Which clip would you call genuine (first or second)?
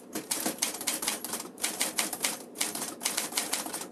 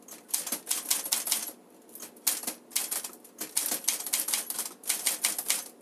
second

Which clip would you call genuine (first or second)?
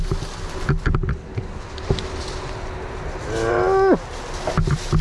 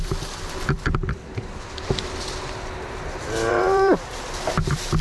first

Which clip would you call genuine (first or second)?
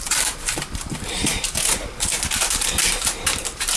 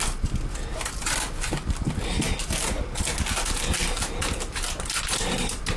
second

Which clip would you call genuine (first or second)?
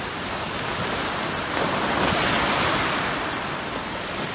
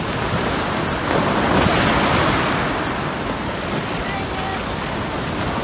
second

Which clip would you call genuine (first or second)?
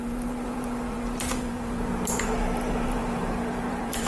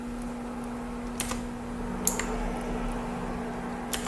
second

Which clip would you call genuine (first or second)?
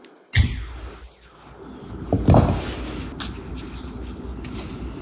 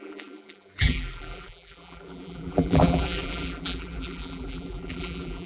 first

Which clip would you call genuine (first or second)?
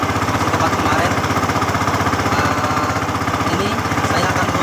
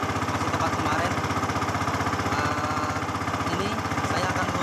second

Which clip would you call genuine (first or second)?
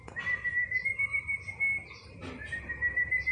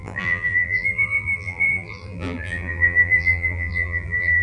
first